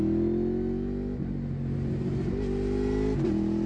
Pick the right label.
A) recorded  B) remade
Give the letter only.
A